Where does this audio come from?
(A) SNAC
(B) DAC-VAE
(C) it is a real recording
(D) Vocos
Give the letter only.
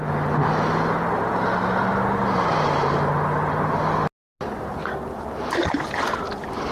C